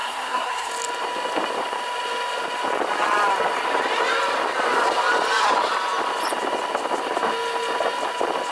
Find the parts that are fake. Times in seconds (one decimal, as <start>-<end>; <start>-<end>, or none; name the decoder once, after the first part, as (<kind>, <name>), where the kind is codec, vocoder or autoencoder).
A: 0.0-0.7 (codec, SNAC)